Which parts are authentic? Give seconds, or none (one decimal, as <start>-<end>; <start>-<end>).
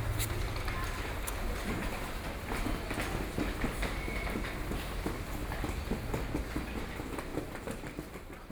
0.0-7.3; 8.0-8.5